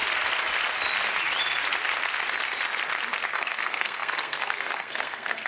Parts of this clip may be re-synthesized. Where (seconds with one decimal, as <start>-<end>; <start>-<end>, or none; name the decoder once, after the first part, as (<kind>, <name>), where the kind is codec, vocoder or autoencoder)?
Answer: 3.3-5.5 (codec, SNAC)